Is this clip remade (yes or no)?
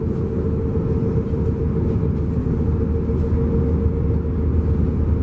no